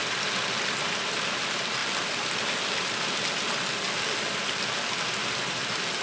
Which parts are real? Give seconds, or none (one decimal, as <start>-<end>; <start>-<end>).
0.0-6.0